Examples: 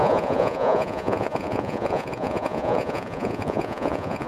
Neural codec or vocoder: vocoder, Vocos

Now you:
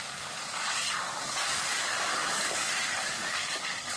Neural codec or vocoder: codec, DAC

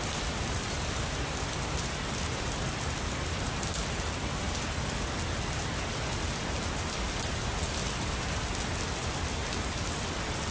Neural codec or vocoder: none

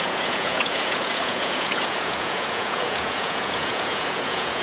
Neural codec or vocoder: vocoder, Vocos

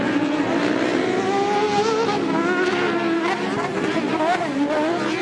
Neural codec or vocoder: none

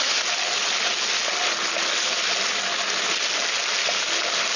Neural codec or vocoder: none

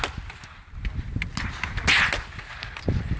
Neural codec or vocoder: none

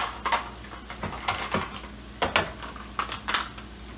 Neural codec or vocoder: none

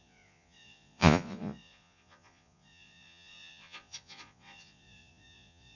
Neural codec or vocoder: vocoder, Vocos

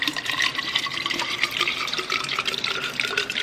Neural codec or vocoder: vocoder, BigVGAN v2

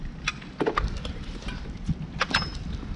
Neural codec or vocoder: none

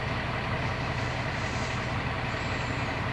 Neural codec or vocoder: none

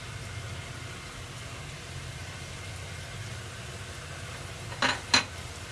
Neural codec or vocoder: none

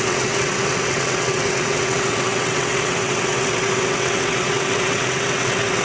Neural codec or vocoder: vocoder, WaveNeXt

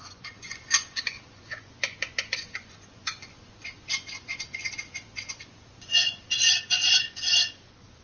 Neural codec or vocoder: vocoder, Vocos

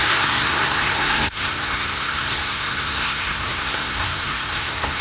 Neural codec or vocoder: codec, SNAC